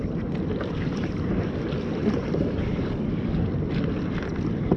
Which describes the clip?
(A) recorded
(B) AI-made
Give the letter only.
A